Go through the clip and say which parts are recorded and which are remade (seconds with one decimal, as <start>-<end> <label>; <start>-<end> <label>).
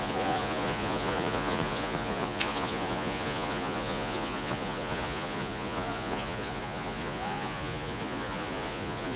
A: 0.0-9.2 remade